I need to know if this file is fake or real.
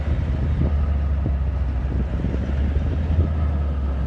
real